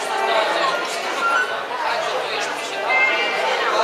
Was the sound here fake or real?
real